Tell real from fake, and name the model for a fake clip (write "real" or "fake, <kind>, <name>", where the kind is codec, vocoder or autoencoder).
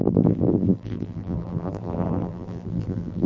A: fake, vocoder, BigVGAN v2